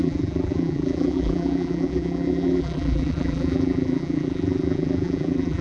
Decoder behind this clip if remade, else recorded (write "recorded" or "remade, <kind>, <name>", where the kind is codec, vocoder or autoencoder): remade, vocoder, BigVGAN v2